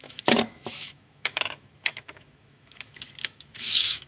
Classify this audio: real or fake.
fake